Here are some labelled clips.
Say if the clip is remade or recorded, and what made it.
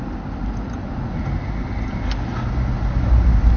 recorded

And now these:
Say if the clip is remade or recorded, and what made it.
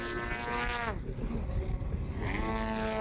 recorded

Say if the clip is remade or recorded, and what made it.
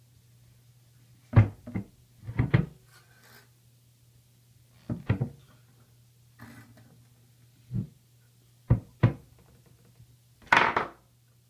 recorded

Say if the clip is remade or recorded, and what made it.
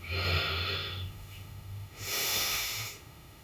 remade, autoencoder, DAC-VAE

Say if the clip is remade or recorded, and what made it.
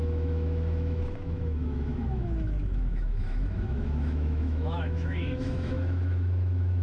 remade, autoencoder, DAC-VAE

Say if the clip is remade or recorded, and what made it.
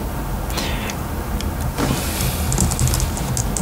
recorded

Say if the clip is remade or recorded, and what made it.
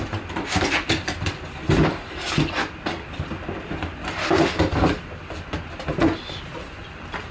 recorded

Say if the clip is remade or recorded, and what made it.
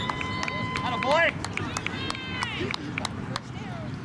recorded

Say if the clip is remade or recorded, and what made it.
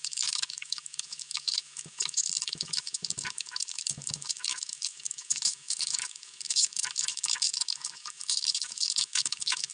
remade, autoencoder, DAC-VAE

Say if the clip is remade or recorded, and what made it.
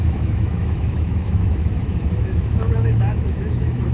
remade, autoencoder, DAC-VAE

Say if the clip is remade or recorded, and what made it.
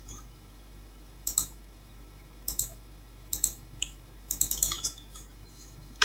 remade, autoencoder, DAC-VAE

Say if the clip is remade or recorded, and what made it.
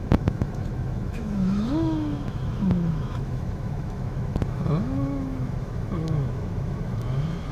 remade, autoencoder, DAC-VAE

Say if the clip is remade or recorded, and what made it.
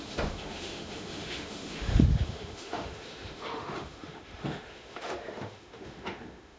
remade, autoencoder, DAC-VAE